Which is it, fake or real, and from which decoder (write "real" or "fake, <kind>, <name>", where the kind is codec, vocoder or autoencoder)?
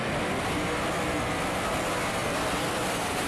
real